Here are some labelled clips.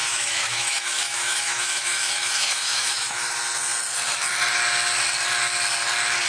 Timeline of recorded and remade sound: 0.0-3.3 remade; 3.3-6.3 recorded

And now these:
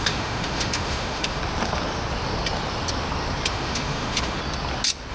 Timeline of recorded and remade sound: 0.0-1.4 remade; 1.4-3.5 recorded; 3.5-4.4 remade; 4.4-5.1 recorded

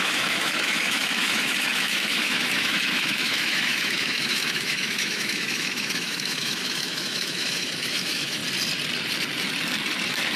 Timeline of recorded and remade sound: 0.0-8.4 remade; 8.4-10.4 recorded

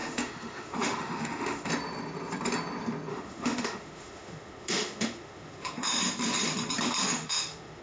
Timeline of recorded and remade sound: 0.0-1.7 remade; 1.7-3.1 recorded; 3.1-6.0 remade; 6.0-7.0 recorded; 7.0-7.8 remade

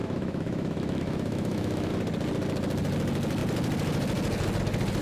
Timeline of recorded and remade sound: 0.0-1.9 remade; 1.9-5.0 recorded

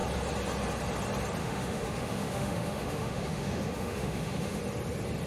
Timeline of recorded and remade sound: 0.0-1.4 recorded; 1.4-4.6 remade; 4.6-5.3 recorded

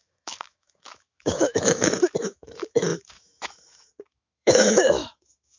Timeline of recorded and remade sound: 0.0-5.6 remade

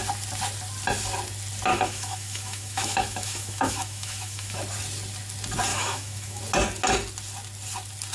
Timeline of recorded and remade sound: 0.0-1.7 recorded; 1.7-4.6 remade; 4.6-5.7 recorded; 5.7-6.4 remade; 6.4-8.1 recorded